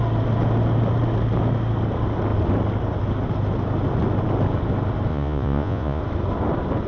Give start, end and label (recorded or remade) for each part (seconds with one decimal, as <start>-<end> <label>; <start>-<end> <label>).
0.0-5.1 recorded; 5.1-6.0 remade; 6.0-6.9 recorded